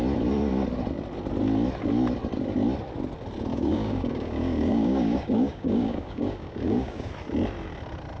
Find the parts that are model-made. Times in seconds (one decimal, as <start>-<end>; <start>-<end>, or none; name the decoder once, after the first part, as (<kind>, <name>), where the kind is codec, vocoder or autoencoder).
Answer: 3.5-7.1 (codec, DAC)